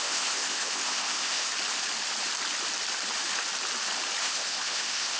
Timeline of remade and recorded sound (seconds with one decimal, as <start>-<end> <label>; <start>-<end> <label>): 0.0-1.5 remade; 1.5-4.2 recorded; 4.2-5.2 remade